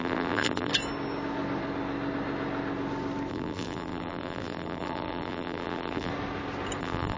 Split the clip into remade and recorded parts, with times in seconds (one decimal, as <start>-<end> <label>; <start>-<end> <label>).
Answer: 0.0-0.7 remade; 0.7-3.3 recorded; 3.3-6.1 remade; 6.1-6.8 recorded; 6.8-7.2 remade

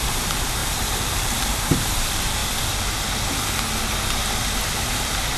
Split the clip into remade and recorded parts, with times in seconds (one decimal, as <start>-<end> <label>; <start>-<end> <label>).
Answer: 0.0-2.4 remade; 2.4-4.7 recorded; 4.7-5.4 remade

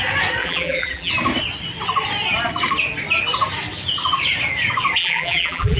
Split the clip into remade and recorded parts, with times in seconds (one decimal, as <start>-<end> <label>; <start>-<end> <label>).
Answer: 0.0-0.4 recorded; 0.4-1.1 remade; 1.1-5.0 recorded; 5.0-5.8 remade